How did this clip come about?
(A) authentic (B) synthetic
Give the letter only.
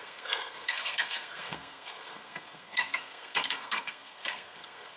B